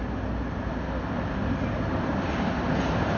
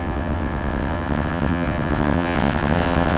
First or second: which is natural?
first